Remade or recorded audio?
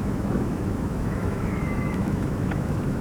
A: remade